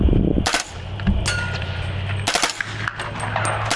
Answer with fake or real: real